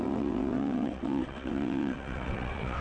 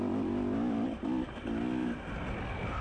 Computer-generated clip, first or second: first